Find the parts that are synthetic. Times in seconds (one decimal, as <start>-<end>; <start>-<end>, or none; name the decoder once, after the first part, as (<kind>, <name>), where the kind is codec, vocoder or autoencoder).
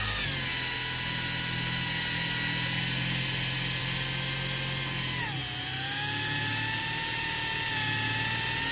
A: none